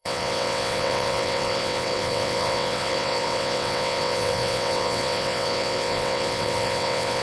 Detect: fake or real fake